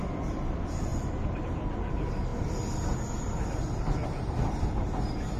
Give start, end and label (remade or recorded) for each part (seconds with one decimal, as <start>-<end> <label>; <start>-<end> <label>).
0.0-5.4 recorded